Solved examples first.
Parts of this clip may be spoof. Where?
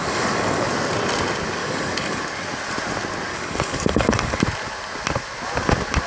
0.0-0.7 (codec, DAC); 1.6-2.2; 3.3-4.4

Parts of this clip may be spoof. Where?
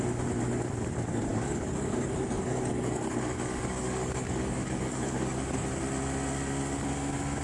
1.3-5.7 (codec, DAC)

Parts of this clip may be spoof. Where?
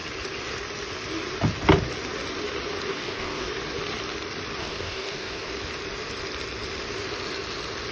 2.9-3.5 (codec, DAC); 4.6-5.5